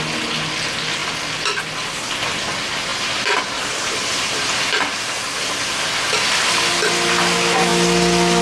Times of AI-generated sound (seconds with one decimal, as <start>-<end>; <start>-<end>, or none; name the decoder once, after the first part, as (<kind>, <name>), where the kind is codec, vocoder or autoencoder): 2.9-4.6 (vocoder, BigVGAN v2)